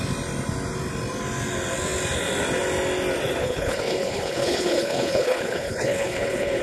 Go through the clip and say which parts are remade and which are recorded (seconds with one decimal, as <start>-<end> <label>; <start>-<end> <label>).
0.0-3.4 recorded; 3.4-6.6 remade